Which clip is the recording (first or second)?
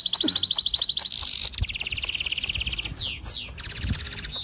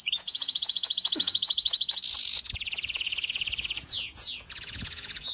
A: first